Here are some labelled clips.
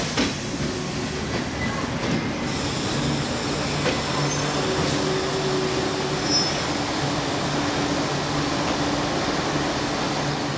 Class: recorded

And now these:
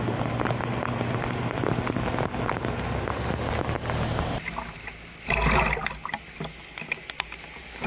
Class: recorded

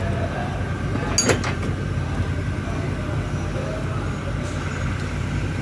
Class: recorded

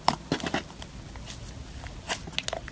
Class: recorded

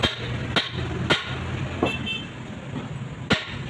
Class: recorded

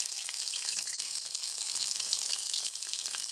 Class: remade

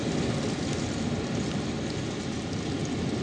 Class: recorded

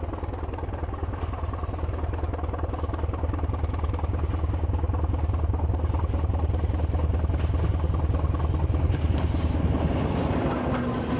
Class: recorded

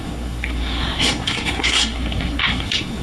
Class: remade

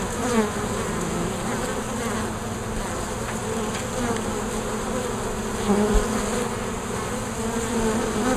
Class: recorded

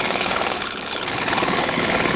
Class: remade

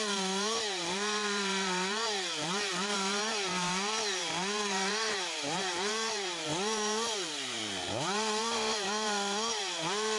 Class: remade